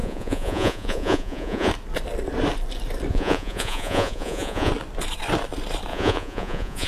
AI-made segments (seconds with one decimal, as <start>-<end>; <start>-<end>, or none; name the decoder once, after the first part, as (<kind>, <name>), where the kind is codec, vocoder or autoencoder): 0.0-1.7 (vocoder, Vocos); 3.1-4.7; 5.9-6.9